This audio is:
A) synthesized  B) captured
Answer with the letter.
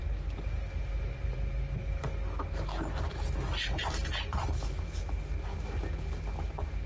B